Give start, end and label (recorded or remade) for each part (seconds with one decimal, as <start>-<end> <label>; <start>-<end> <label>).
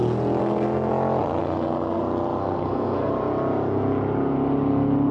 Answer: 0.0-0.4 recorded; 0.4-0.9 remade; 0.9-1.4 recorded; 1.4-2.0 remade; 2.0-2.4 recorded; 2.4-3.1 remade; 3.1-5.1 recorded